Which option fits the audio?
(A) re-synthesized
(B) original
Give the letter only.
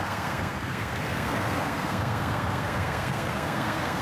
A